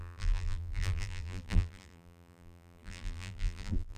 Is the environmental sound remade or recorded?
remade